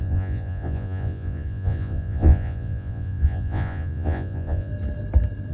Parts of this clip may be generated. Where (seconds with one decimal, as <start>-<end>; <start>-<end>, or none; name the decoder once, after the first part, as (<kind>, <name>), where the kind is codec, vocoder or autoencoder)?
0.0-4.7 (vocoder, Vocos)